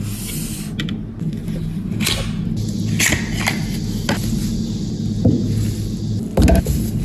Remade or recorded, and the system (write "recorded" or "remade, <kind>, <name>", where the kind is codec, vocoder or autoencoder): recorded